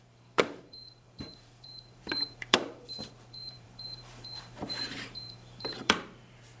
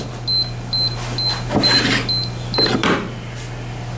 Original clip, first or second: second